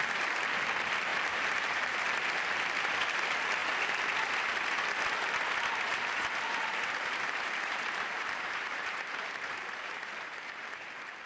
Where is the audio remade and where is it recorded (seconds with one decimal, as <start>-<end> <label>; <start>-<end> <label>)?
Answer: 0.0-1.1 recorded; 1.1-2.0 remade; 2.0-5.9 recorded; 5.9-11.3 remade